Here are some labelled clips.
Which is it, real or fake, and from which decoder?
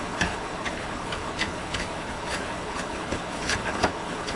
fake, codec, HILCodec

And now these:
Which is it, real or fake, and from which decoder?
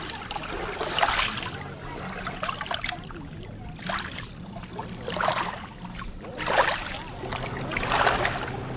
real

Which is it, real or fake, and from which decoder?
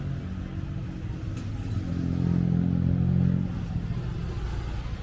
real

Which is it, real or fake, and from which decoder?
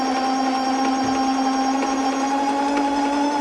real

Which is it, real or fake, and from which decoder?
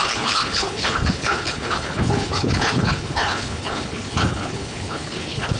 fake, codec, HILCodec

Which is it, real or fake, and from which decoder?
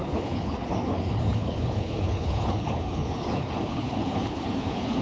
fake, codec, HILCodec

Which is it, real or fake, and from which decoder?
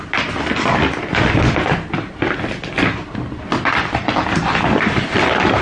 real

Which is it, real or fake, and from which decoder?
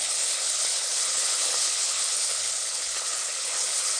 fake, codec, HILCodec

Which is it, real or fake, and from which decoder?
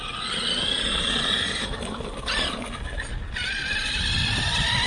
real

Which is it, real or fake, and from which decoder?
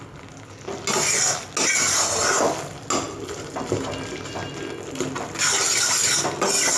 real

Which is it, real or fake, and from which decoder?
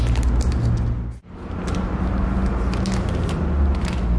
real